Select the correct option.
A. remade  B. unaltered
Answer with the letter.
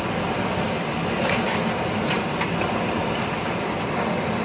B